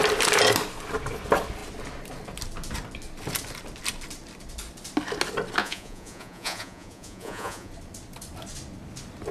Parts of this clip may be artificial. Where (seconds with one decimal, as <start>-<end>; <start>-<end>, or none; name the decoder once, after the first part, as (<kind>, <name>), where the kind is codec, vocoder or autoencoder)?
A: 5.6-7.7 (vocoder, Vocos)